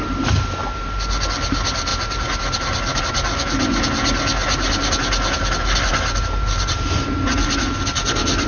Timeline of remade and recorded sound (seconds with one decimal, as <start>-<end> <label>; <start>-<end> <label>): 0.0-8.5 recorded